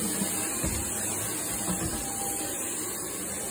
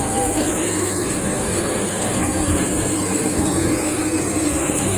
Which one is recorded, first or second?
first